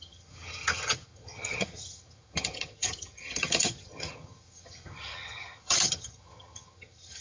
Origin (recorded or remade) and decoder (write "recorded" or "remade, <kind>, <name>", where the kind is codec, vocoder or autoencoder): remade, vocoder, HiFi-GAN